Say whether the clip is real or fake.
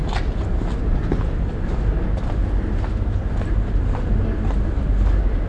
real